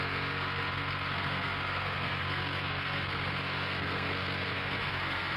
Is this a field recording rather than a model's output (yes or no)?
no